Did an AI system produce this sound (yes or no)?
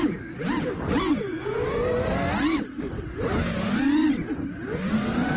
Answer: no